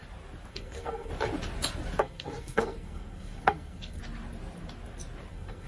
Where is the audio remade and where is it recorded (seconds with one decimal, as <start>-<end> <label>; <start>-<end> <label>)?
0.0-0.5 recorded; 0.5-1.1 remade; 1.1-2.0 recorded; 2.0-4.0 remade; 4.0-5.3 recorded; 5.3-5.7 remade